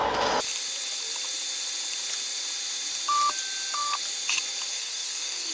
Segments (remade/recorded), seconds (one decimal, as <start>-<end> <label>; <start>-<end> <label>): 0.0-4.7 recorded; 4.7-5.5 remade